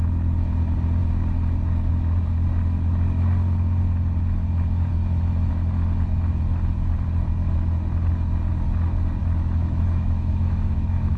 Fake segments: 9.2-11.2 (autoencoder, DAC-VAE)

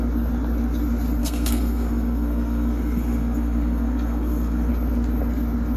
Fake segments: 1.2-4.7 (codec, SNAC)

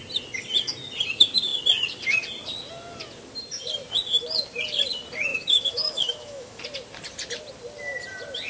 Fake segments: 5.3-6.6 (autoencoder, DAC-VAE)

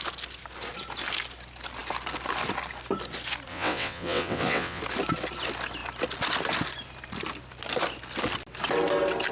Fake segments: 3.5-4.8 (vocoder, WaveNeXt)

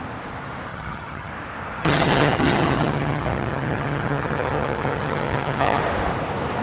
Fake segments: 0.7-1.3 (vocoder, HiFi-GAN); 1.8-5.8

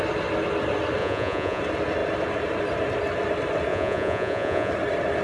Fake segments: 1.0-1.6 (vocoder, Vocos); 3.7-4.7

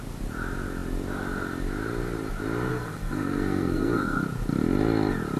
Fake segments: 2.7-4.2 (codec, SNAC)